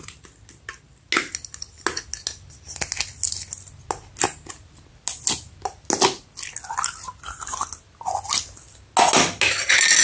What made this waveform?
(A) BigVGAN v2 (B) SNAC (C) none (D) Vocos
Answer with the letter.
C